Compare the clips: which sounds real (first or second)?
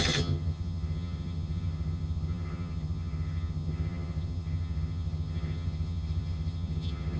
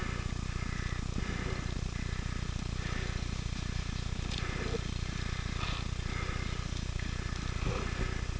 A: second